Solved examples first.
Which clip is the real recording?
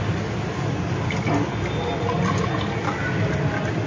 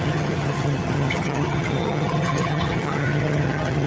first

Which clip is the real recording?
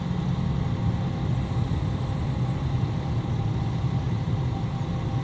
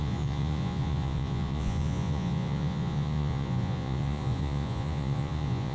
first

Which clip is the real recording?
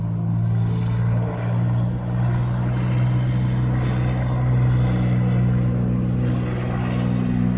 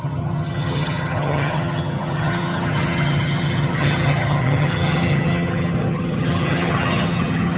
first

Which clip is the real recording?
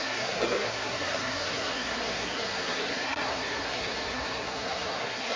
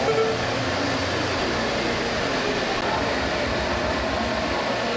second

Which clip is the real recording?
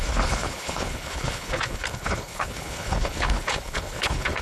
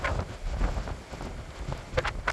second